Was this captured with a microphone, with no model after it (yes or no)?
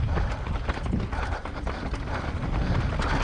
yes